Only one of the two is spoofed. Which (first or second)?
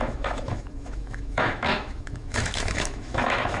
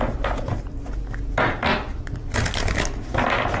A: first